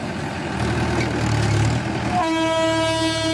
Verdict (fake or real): real